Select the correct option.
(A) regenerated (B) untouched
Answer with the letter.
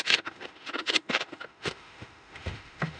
A